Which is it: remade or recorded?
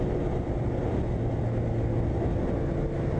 recorded